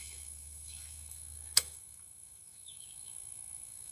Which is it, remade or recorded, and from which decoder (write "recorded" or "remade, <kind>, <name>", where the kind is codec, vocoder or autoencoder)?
remade, autoencoder, DAC-VAE